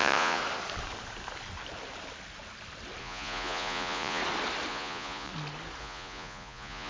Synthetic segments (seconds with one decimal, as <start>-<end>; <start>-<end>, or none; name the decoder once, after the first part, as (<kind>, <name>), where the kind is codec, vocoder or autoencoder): 0.0-0.4 (vocoder, Vocos); 3.0-4.2; 4.7-5.3; 5.8-6.9